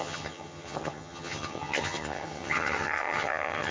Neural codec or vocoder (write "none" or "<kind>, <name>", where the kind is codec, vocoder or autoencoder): vocoder, HiFi-GAN